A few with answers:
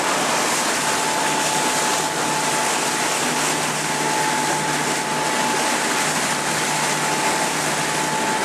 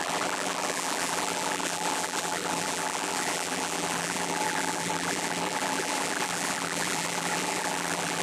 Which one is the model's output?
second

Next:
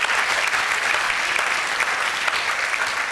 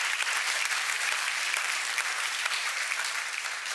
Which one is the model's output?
second